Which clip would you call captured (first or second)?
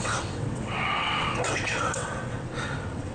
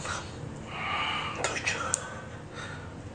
second